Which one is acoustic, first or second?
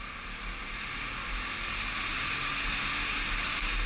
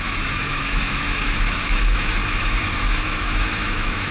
first